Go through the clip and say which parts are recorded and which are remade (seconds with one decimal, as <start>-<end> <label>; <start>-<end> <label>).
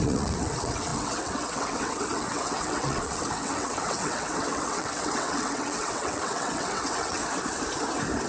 0.0-7.2 remade; 7.2-8.3 recorded